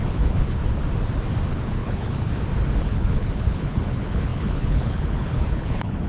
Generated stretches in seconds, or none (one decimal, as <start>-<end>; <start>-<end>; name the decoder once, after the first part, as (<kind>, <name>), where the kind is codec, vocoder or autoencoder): 0.0-0.6 (codec, HILCodec); 1.5-2.3; 2.8-6.1